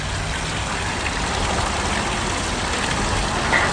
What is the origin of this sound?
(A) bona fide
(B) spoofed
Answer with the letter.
A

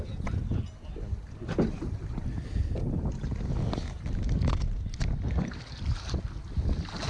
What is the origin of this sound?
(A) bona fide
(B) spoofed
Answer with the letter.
A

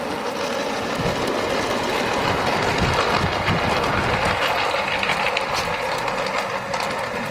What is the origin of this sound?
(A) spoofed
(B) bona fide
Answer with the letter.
B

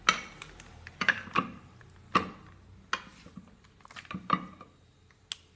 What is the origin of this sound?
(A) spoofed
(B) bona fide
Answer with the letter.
B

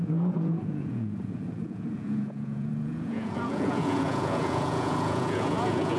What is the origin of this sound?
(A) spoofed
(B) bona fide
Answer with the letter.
A